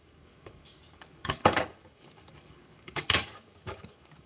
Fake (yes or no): yes